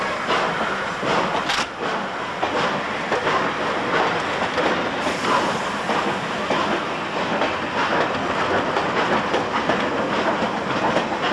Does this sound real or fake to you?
real